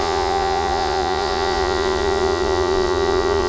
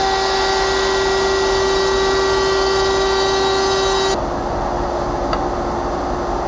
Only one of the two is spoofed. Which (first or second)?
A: first